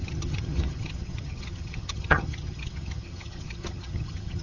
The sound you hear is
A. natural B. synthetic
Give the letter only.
B